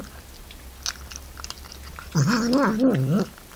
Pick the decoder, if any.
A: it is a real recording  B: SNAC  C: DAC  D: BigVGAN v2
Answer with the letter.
A